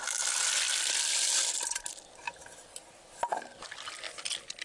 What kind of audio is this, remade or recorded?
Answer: recorded